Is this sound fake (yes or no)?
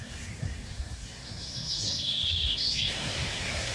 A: yes